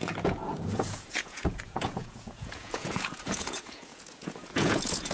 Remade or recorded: remade